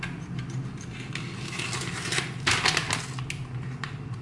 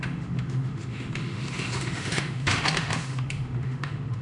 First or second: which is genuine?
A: first